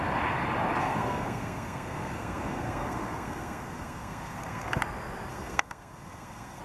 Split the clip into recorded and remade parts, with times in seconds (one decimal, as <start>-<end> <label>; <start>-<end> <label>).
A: 0.0-0.8 recorded; 0.8-4.8 remade; 4.8-5.3 recorded; 5.3-6.6 remade